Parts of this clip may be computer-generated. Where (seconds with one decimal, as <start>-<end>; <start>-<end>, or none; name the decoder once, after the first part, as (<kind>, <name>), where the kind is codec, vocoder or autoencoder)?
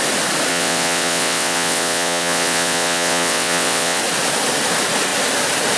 0.5-4.0 (vocoder, WaveNeXt)